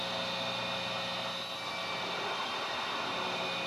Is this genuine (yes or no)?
yes